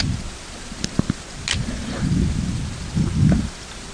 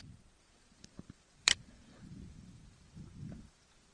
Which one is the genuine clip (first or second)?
first